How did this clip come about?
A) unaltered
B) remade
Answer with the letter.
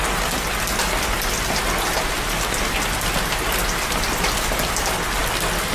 A